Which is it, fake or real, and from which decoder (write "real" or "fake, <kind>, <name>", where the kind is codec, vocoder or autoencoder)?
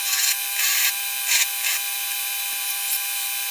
real